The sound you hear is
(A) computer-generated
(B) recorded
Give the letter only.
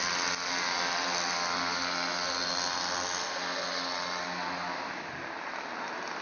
B